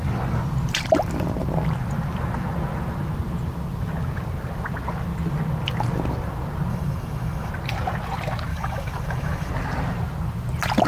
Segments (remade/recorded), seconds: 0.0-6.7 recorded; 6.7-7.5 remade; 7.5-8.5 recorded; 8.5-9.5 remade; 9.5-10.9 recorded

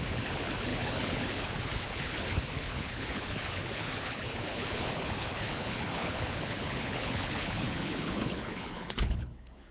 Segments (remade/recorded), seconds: 0.0-9.7 remade

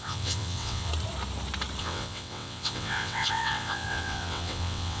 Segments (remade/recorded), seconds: 0.0-0.9 remade; 0.9-1.8 recorded; 1.8-5.0 remade